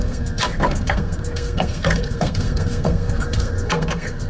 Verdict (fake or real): fake